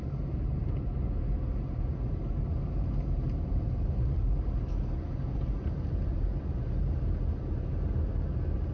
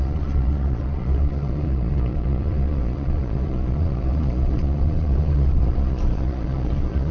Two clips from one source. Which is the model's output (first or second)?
second